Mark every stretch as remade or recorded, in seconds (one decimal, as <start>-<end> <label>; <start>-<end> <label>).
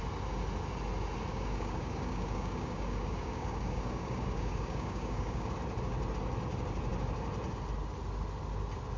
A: 0.0-1.3 recorded; 1.3-5.5 remade; 5.5-9.0 recorded